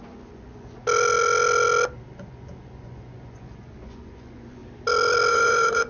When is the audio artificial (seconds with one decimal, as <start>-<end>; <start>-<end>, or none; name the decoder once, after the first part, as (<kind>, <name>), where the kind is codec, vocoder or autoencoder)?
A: 0.0-0.8 (vocoder, Vocos); 2.1-4.6; 5.3-5.9